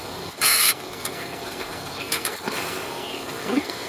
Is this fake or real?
fake